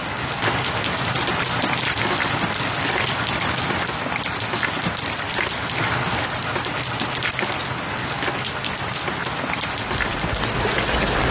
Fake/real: real